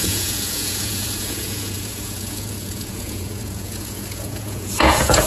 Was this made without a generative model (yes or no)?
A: no